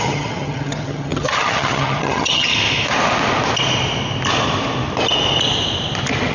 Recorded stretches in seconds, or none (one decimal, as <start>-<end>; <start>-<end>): 2.5-6.3